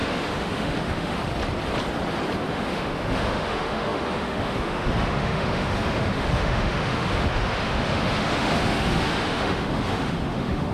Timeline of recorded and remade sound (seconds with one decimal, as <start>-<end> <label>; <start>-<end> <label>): 0.0-1.2 remade; 1.2-2.5 recorded; 2.5-10.7 remade